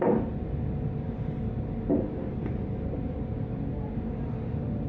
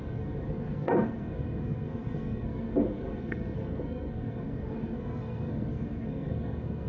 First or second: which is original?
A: first